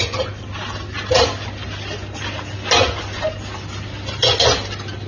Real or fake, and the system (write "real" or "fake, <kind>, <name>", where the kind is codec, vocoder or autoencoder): real